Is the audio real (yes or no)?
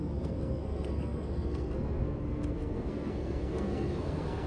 no